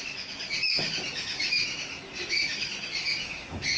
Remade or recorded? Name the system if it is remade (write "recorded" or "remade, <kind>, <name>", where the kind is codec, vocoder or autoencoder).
remade, autoencoder, DAC-VAE